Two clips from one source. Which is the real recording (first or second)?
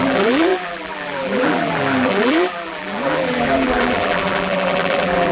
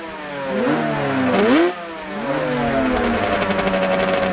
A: second